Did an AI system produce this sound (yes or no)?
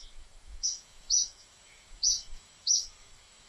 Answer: yes